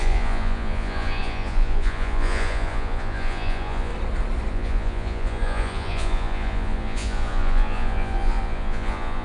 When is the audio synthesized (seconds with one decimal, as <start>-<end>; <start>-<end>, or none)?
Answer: 0.0-3.9; 4.5-9.2

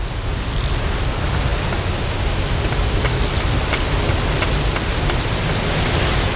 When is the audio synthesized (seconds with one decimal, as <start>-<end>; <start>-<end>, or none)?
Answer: none

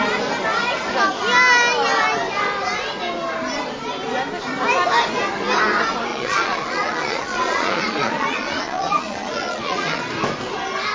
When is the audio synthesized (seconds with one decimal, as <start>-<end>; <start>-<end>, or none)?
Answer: 6.1-10.0

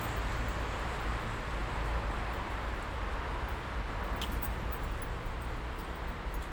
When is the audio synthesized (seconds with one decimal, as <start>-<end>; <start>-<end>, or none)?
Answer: none